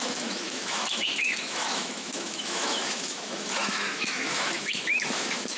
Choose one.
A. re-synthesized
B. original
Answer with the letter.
A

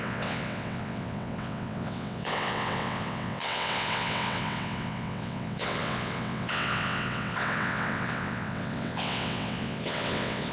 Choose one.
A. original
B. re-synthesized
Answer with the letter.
B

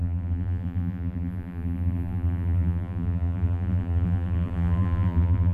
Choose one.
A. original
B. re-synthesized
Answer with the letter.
B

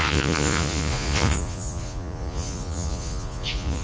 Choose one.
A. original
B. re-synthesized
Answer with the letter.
B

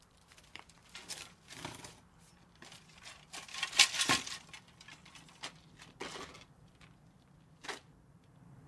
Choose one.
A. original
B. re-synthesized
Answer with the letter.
B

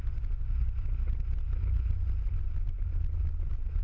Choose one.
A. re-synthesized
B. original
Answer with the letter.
B